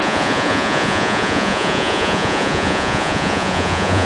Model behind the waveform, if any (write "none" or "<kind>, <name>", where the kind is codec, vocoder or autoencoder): vocoder, Vocos